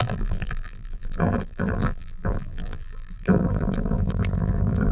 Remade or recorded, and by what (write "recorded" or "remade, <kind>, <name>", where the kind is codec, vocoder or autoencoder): remade, vocoder, BigVGAN v2